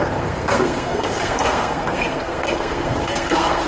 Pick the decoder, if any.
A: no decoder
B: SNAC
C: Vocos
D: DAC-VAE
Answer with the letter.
B